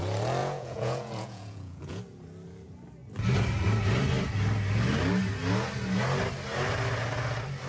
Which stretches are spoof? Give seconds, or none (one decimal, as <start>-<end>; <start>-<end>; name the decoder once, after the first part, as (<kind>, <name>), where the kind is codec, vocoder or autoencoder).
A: 0.4-2.0 (vocoder, Vocos)